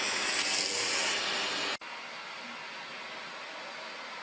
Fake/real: real